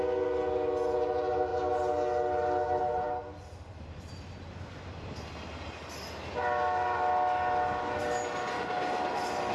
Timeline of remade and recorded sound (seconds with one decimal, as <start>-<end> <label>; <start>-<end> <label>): 0.0-9.5 recorded

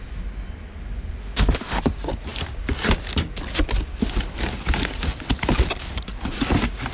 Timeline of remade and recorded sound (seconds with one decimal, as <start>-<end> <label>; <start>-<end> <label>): 0.0-1.2 recorded; 1.2-1.8 remade; 1.8-6.9 recorded

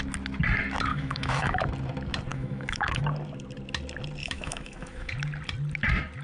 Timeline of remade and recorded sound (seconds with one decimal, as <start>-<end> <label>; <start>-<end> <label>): 0.0-0.9 recorded; 0.9-1.6 remade; 1.6-2.3 recorded; 2.3-3.0 remade; 3.0-4.2 recorded; 4.2-5.1 remade; 5.1-6.2 recorded

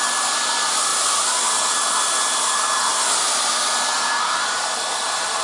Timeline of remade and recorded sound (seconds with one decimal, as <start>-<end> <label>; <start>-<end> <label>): 0.0-5.4 recorded

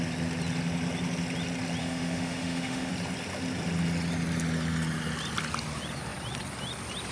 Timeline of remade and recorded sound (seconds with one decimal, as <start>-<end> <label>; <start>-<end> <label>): 0.0-1.8 recorded; 1.8-2.9 remade; 2.9-7.1 recorded

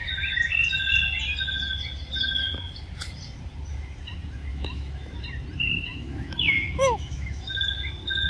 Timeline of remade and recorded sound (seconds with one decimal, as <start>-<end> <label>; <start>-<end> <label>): 0.0-4.5 recorded; 4.5-5.1 remade; 5.1-5.9 recorded; 5.9-7.6 remade; 7.6-8.3 recorded